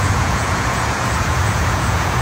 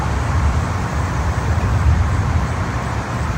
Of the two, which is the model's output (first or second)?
first